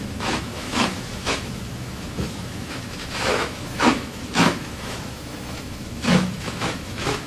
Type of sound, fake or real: fake